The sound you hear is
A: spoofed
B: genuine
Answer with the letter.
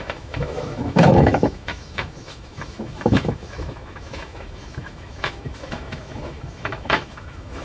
A